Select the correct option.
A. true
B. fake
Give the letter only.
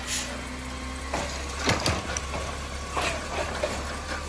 A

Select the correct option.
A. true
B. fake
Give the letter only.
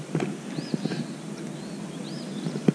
A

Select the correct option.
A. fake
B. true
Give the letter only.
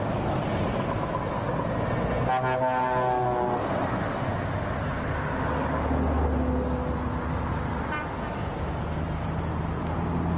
B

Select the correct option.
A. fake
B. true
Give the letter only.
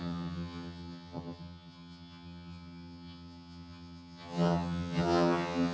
A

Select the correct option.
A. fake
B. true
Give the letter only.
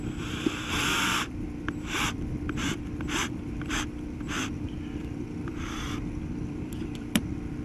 A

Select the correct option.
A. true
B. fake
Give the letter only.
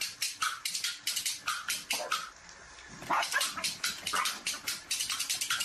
A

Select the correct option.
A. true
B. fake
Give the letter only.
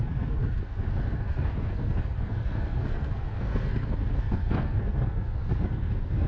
B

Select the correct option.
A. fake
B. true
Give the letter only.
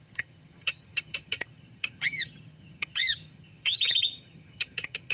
A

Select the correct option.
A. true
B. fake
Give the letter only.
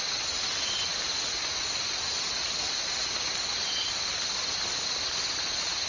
A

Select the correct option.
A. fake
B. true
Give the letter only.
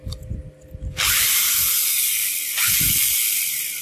B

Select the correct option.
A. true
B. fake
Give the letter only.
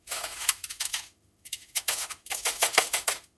B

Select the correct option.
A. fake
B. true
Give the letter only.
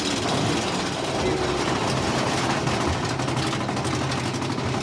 B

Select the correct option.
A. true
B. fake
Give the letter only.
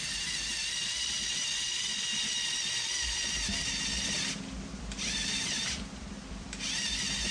B